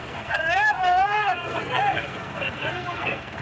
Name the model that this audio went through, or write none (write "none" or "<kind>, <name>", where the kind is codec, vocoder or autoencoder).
codec, SNAC